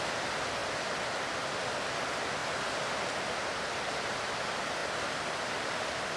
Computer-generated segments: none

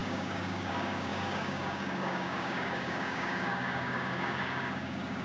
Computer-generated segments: 0.0-5.2 (codec, DAC)

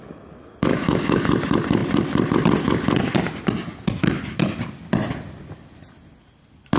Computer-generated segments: 0.7-1.3 (codec, DAC)

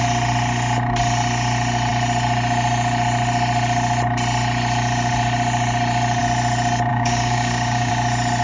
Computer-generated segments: 6.9-7.9 (codec, DAC)

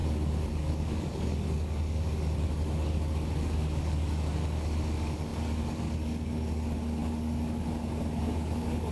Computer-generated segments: 0.0-8.9 (codec, DAC)

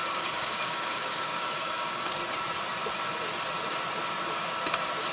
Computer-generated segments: 0.0-2.1 (codec, DAC)